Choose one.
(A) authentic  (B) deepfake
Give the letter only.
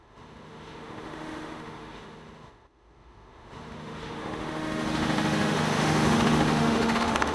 B